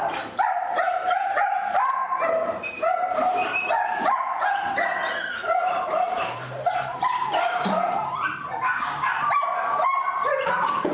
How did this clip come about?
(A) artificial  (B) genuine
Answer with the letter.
A